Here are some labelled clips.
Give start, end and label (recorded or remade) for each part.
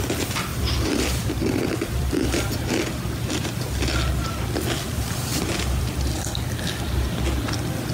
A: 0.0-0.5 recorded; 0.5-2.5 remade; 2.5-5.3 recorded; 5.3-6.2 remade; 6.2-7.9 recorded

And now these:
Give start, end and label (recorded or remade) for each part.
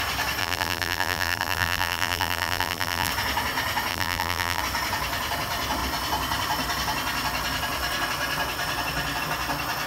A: 0.0-0.4 recorded; 0.4-3.1 remade; 3.1-3.9 recorded; 3.9-4.6 remade; 4.6-9.9 recorded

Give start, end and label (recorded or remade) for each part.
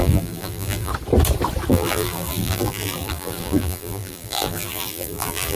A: 0.0-0.9 remade; 0.9-1.7 recorded; 1.7-5.6 remade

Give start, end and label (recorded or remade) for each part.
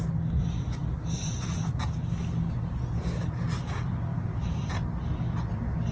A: 0.0-0.8 recorded; 0.8-2.1 remade; 2.1-4.1 recorded; 4.1-4.7 remade; 4.7-5.9 recorded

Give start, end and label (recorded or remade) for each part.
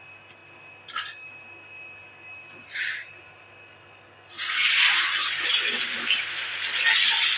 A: 0.0-2.6 recorded; 2.6-3.4 remade; 3.4-4.3 recorded; 4.3-5.6 remade; 5.6-7.4 recorded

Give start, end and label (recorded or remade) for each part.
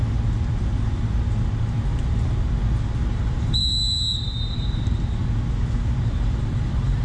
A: 0.0-3.1 recorded; 3.1-3.6 remade; 3.6-4.5 recorded; 4.5-5.2 remade; 5.2-6.0 recorded; 6.0-7.0 remade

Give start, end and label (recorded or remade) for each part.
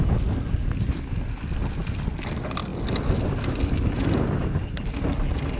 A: 0.0-5.6 recorded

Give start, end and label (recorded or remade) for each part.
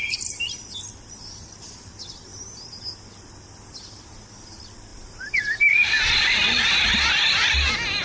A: 0.0-4.9 recorded; 4.9-6.7 remade; 6.7-8.0 recorded